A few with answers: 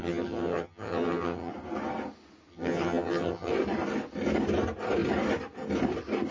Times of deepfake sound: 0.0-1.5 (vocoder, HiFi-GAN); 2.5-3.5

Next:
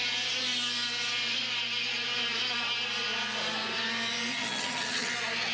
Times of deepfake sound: 4.3-5.1 (vocoder, HiFi-GAN)

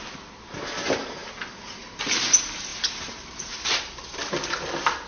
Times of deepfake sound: none